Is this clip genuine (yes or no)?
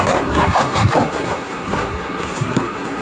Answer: no